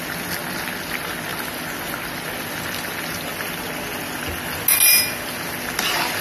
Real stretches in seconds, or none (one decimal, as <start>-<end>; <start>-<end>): 0.0-6.2